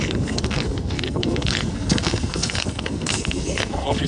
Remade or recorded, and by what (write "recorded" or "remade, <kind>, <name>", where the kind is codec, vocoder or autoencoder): remade, codec, SNAC